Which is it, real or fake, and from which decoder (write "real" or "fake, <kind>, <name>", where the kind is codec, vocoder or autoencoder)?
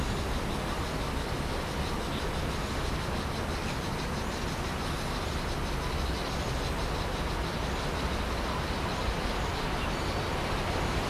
real